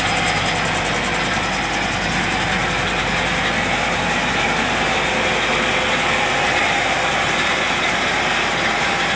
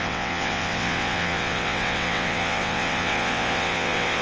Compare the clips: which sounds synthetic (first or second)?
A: second